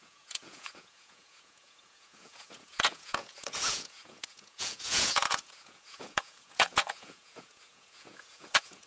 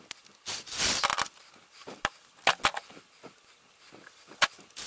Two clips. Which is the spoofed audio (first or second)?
first